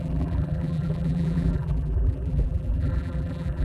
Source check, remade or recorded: remade